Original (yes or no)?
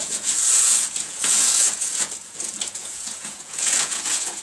no